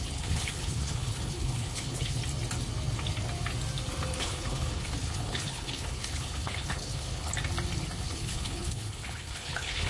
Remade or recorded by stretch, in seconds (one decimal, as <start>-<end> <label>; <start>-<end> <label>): 0.0-2.2 remade; 2.2-4.2 recorded; 4.2-7.3 remade; 7.3-8.0 recorded; 8.0-9.9 remade